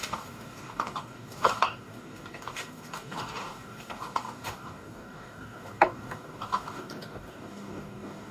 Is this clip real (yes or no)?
no